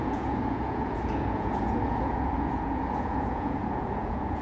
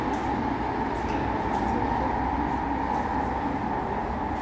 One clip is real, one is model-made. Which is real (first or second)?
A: second